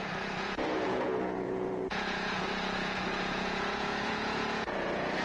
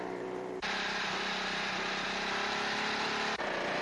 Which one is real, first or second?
second